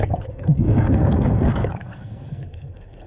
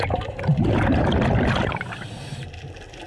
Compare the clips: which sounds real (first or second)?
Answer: second